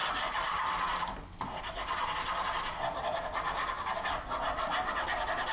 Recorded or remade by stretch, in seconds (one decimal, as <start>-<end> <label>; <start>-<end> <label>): 0.0-5.5 recorded